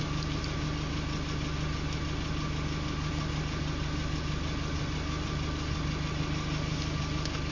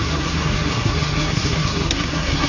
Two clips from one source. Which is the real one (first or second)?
first